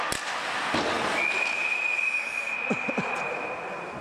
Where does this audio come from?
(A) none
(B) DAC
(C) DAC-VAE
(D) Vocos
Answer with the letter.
A